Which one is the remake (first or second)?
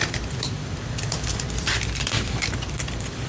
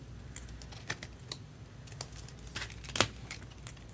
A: first